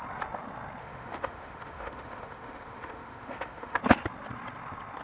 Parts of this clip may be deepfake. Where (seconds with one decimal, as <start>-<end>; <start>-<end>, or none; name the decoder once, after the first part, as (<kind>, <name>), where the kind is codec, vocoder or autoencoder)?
0.8-3.8 (autoencoder, DAC-VAE)